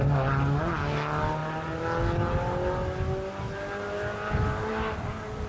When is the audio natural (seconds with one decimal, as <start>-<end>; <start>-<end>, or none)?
0.0-5.5